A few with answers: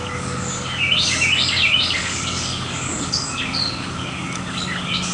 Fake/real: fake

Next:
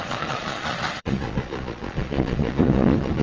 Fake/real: fake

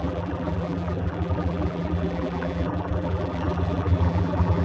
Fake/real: fake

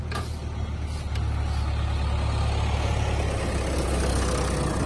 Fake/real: real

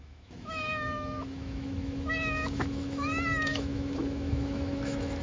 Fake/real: fake